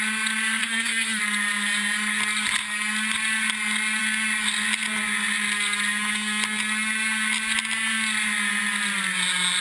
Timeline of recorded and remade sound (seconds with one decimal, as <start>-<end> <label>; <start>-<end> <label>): 0.0-0.6 recorded; 0.6-1.2 remade; 1.2-9.6 recorded